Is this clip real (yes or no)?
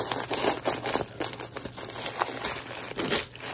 yes